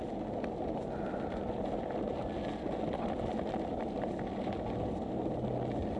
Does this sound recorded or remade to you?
recorded